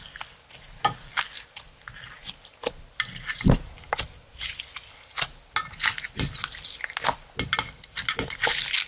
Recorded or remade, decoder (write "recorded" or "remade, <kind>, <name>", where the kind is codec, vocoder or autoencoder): recorded